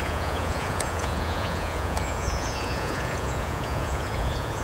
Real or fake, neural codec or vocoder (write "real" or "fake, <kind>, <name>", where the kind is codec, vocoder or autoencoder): fake, vocoder, Vocos